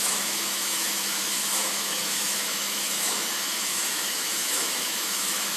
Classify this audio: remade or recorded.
remade